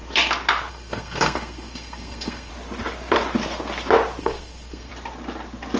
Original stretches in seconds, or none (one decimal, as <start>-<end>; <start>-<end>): 0.0-0.7; 2.5-4.2; 4.9-5.8